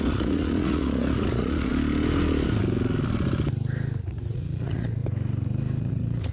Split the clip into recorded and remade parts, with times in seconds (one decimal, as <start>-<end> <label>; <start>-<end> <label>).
0.0-1.7 remade; 1.7-4.0 recorded; 4.0-5.0 remade; 5.0-5.8 recorded; 5.8-6.3 remade

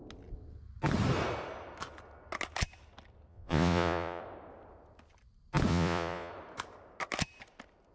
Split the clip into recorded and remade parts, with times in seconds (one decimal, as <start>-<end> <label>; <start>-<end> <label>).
0.0-3.3 recorded; 3.3-4.2 remade; 4.2-5.7 recorded; 5.7-6.3 remade; 6.3-7.9 recorded

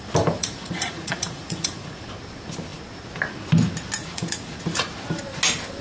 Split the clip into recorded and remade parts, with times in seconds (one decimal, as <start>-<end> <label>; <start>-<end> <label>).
0.0-0.4 recorded; 0.4-2.0 remade; 2.0-4.0 recorded; 4.0-4.9 remade; 4.9-5.8 recorded

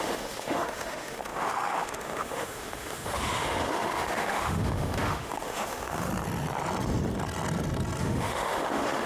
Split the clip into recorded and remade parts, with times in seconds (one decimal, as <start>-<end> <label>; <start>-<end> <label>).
0.0-6.1 remade; 6.1-8.0 recorded; 8.0-9.1 remade

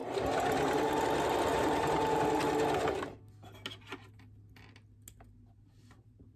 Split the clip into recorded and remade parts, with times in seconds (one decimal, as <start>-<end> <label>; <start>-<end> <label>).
0.0-1.5 recorded; 1.5-2.2 remade; 2.2-6.4 recorded

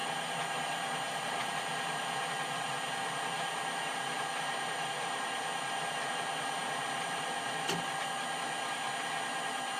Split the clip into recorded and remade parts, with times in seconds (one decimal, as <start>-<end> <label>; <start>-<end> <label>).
0.0-9.8 recorded

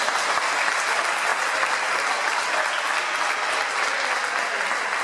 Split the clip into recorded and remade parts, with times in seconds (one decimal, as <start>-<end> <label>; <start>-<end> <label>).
0.0-5.0 recorded